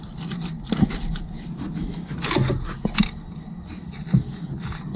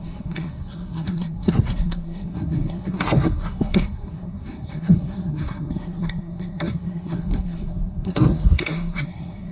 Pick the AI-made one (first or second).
second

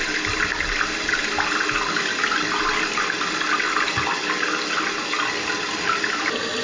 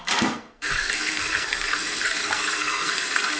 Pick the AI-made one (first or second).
second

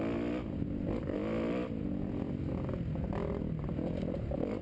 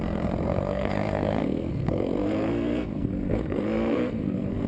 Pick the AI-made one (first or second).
second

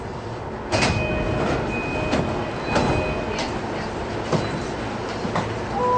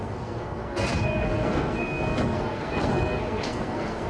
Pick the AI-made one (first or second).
second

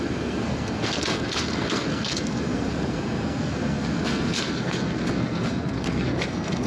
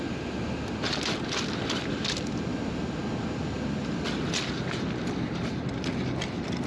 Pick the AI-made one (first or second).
first